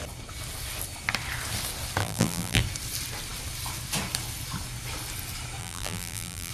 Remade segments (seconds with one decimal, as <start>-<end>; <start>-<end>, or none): 2.0-2.6; 5.6-6.5